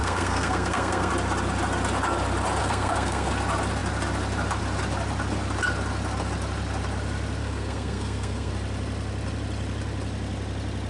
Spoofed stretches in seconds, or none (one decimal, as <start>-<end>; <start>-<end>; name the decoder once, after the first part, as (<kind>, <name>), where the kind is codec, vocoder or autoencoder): 0.0-1.1 (codec, SNAC); 2.6-3.3; 7.4-8.5